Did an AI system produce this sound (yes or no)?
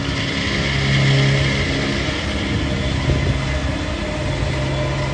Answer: no